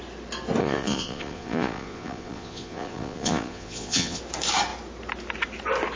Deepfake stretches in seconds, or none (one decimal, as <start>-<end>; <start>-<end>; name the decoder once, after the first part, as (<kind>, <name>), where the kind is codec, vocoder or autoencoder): 0.6-4.2 (vocoder, Vocos)